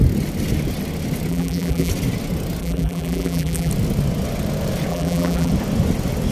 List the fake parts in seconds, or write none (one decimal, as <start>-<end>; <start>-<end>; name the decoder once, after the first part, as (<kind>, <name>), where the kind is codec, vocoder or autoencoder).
1.3-1.9 (vocoder, BigVGAN v2); 2.6-3.7; 4.9-5.5